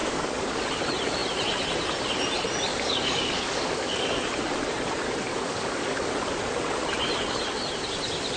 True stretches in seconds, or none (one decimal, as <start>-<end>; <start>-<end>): 0.6-2.7; 4.2-5.3; 6.1-8.4